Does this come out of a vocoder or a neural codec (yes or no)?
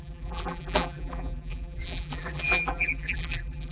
yes